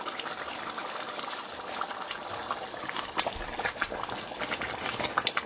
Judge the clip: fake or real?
real